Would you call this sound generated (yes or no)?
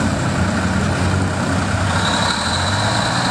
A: no